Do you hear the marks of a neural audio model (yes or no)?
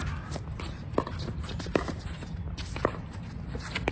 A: no